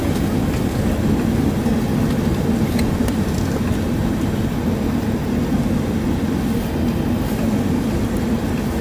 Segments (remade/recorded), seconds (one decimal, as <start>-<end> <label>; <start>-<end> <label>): 0.0-8.8 recorded